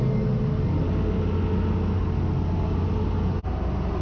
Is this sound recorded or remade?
recorded